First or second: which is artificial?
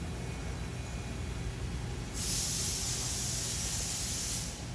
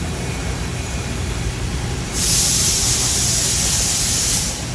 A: second